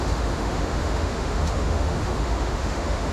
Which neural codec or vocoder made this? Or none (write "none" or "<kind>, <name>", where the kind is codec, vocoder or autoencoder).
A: autoencoder, DAC-VAE